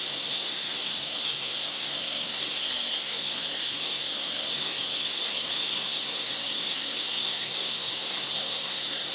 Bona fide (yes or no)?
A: no